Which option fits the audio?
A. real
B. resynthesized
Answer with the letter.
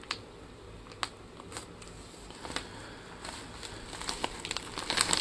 A